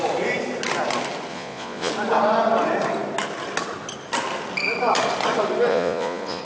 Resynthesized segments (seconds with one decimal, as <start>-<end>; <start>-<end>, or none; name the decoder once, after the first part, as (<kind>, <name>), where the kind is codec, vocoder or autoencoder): 1.3-1.9 (vocoder, Vocos); 5.7-6.4